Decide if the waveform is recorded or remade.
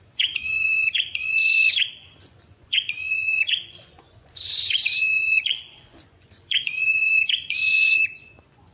remade